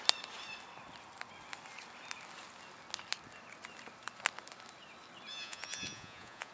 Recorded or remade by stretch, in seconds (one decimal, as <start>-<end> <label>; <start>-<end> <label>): 0.0-5.3 recorded; 5.3-6.5 remade